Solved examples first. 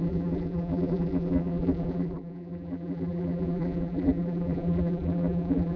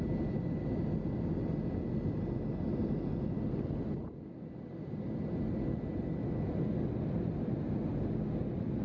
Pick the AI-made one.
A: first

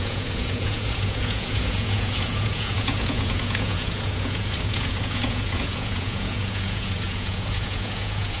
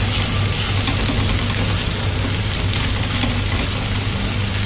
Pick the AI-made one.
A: first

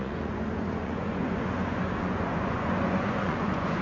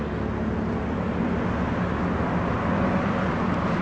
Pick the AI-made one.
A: first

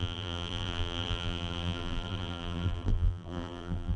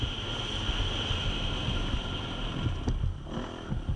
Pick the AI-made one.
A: first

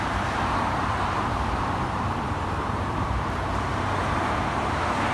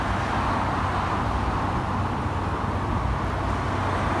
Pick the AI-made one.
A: first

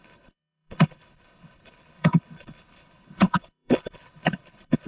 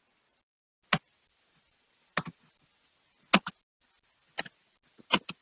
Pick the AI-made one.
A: first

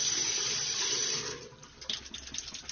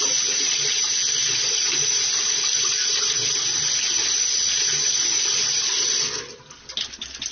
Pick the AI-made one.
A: first